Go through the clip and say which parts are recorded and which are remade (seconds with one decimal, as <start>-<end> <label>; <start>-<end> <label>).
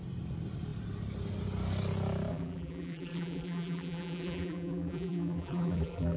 0.0-2.3 recorded; 2.3-6.2 remade